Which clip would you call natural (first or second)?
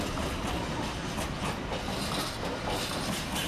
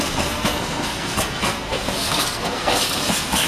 first